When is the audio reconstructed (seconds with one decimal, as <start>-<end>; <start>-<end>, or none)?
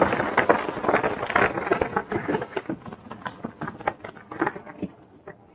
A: 2.0-2.7